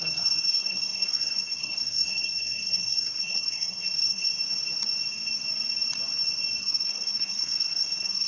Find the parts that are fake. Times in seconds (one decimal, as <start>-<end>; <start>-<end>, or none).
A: 0.0-4.3; 6.6-8.3